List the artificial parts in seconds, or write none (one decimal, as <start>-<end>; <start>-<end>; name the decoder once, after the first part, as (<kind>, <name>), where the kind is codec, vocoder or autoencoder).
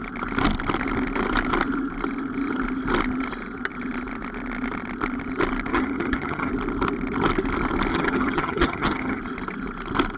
5.7-6.5 (vocoder, HiFi-GAN); 7.9-9.2